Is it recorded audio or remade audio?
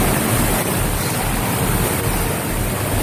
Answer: recorded